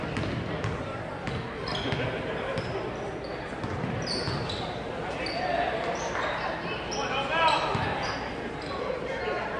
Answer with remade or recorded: recorded